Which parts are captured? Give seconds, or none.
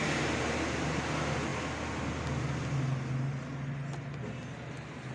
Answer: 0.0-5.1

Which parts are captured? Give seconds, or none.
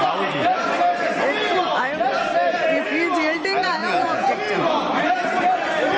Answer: 0.0-3.8; 4.3-6.0